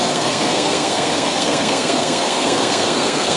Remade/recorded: remade